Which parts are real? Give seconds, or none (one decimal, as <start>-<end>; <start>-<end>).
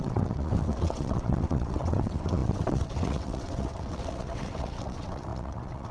none